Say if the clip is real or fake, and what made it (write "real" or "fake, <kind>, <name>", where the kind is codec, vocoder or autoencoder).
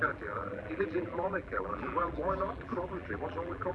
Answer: fake, vocoder, BigVGAN v2